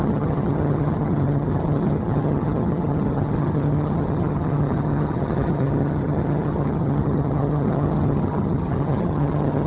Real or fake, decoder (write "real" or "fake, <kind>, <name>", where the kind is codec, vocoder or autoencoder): fake, vocoder, HiFi-GAN